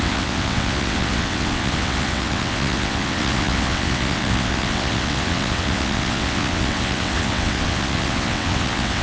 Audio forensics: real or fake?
fake